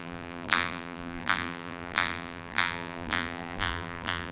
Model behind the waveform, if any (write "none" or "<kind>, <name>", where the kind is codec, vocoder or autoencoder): vocoder, BigVGAN v2